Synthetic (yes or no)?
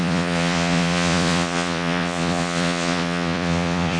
yes